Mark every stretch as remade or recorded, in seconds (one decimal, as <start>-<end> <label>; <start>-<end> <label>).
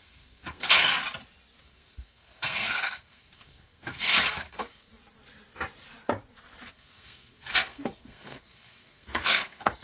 0.0-0.9 remade; 0.9-1.6 recorded; 1.6-4.9 remade; 4.9-6.7 recorded; 6.7-9.8 remade